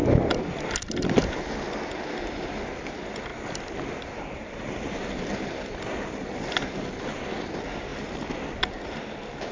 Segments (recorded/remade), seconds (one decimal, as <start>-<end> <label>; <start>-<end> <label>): 0.0-9.5 recorded